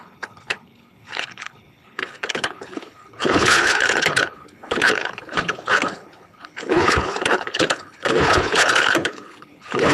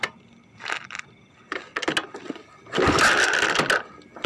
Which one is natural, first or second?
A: second